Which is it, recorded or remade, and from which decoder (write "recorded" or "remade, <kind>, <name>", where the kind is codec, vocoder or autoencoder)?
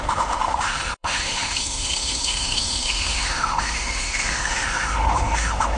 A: remade, autoencoder, DAC-VAE